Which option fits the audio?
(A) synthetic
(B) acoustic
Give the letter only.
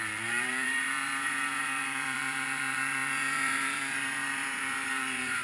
A